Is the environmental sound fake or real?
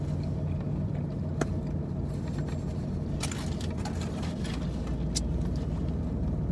real